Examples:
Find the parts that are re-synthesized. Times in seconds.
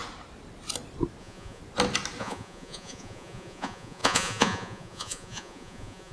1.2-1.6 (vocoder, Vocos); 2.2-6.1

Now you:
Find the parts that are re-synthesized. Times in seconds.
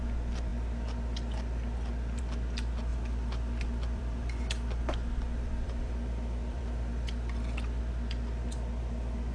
2.9-7.8 (vocoder, BigVGAN v2)